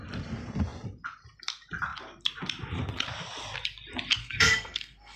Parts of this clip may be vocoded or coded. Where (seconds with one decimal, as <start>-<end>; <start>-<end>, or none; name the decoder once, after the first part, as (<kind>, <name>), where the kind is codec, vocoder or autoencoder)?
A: 4.2-5.2 (codec, SNAC)

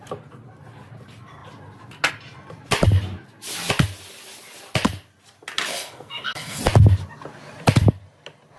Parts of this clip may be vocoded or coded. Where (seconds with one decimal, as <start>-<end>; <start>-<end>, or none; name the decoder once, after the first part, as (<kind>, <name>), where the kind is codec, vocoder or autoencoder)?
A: 5.7-6.6 (codec, SNAC)

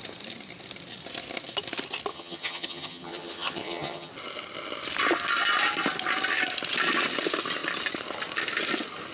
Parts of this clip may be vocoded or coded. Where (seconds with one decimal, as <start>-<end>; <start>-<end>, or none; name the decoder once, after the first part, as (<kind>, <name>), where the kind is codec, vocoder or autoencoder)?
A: 2.1-4.1 (vocoder, HiFi-GAN)

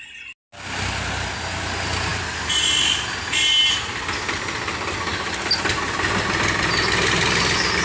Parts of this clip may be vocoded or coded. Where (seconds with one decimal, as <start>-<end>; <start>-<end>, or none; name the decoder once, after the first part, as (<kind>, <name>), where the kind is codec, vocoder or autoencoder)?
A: none

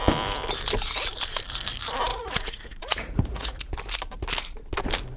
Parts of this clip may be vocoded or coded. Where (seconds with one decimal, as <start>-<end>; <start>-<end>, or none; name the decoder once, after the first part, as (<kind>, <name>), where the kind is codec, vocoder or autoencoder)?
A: 2.1-3.6 (vocoder, Vocos)

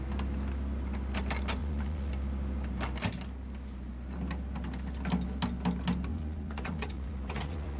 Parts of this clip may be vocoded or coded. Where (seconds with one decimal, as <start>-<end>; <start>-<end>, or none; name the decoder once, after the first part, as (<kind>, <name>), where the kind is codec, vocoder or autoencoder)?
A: 1.6-2.1 (vocoder, Vocos); 6.1-7.8

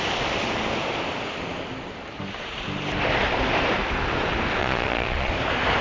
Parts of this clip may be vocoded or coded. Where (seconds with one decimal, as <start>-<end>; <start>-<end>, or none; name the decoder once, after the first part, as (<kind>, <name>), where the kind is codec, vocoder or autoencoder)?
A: 4.6-5.3 (vocoder, Vocos)

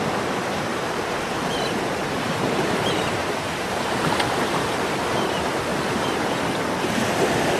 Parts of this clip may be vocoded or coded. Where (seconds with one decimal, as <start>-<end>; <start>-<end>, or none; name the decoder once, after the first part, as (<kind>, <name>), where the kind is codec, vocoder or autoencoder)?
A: 0.7-5.1 (vocoder, BigVGAN v2); 5.7-6.2